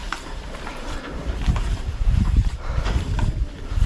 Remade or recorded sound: remade